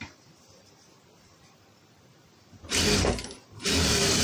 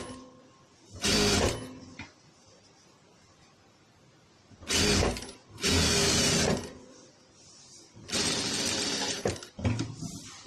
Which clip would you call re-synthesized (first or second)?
first